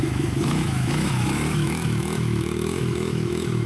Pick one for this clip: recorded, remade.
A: remade